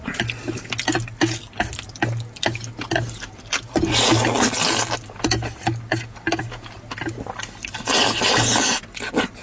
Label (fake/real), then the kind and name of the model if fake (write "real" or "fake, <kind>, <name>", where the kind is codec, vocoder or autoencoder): real